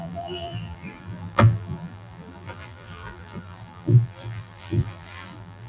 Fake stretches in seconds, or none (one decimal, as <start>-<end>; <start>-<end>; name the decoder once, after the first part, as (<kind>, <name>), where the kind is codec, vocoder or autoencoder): 0.0-5.7 (vocoder, BigVGAN v2)